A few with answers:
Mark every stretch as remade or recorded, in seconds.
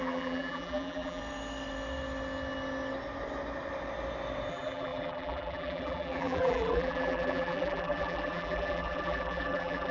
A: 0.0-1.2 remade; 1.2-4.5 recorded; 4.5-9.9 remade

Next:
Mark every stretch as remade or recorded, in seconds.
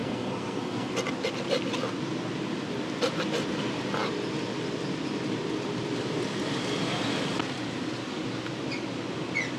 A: 0.0-0.9 remade; 0.9-9.6 recorded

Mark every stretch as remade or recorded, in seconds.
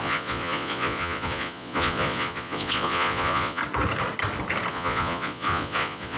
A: 0.0-3.6 remade; 3.6-4.7 recorded; 4.7-6.2 remade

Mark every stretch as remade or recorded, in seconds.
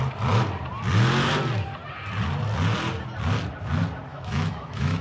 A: 0.0-4.1 recorded; 4.1-5.0 remade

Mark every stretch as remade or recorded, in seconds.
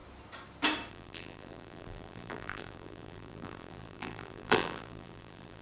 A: 0.0-0.9 recorded; 0.9-5.6 remade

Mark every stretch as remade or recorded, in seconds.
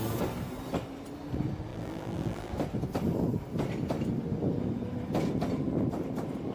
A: 0.0-1.7 recorded; 1.7-2.5 remade; 2.5-6.5 recorded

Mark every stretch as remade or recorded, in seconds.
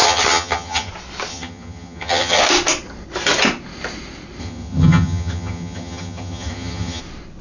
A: 0.0-0.9 remade; 0.9-1.3 recorded; 1.3-2.4 remade; 2.4-4.4 recorded; 4.4-7.0 remade; 7.0-7.4 recorded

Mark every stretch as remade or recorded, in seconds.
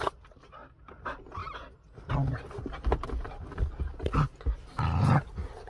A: 0.0-5.7 recorded